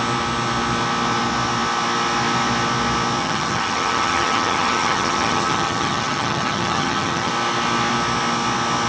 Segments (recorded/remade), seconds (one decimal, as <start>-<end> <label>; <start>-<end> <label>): 0.0-3.2 recorded; 3.2-7.3 remade; 7.3-8.9 recorded